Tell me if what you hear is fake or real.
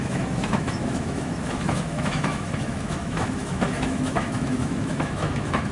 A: fake